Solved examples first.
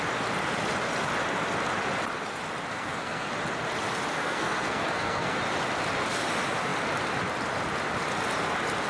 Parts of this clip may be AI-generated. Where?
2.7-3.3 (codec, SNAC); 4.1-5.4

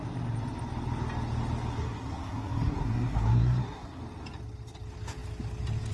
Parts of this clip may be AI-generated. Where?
1.8-4.0 (codec, SNAC)

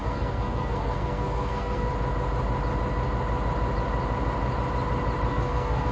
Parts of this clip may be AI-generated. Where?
0.0-1.9 (codec, SNAC); 5.3-5.9

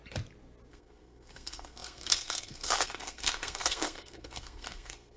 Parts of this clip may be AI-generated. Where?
0.7-5.2 (codec, SNAC)

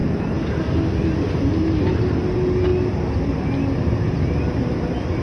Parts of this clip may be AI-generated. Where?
none